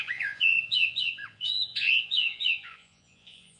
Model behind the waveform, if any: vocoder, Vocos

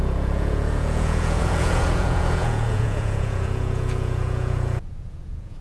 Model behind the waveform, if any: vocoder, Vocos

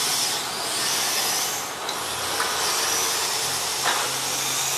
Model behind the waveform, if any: none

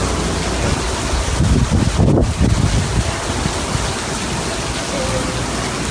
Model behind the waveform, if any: none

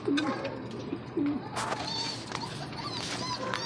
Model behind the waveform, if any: none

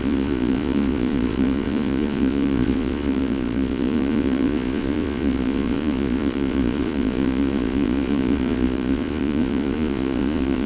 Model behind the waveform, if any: vocoder, Vocos